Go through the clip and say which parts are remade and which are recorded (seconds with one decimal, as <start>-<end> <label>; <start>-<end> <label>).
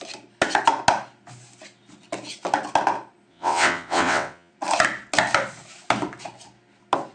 0.0-3.3 recorded; 3.3-4.5 remade; 4.5-7.1 recorded